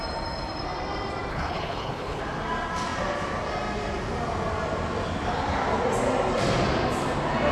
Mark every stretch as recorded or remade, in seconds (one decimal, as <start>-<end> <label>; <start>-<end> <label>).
0.0-1.3 recorded; 1.3-2.2 remade; 2.2-7.5 recorded